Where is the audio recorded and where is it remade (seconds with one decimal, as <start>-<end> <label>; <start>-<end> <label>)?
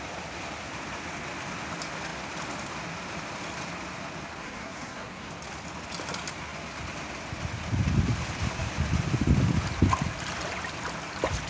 0.0-4.4 recorded; 4.4-5.3 remade; 5.3-11.5 recorded